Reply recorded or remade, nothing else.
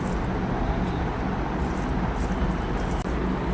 recorded